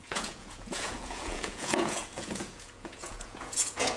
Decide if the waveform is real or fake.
fake